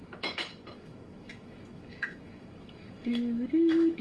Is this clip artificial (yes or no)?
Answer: yes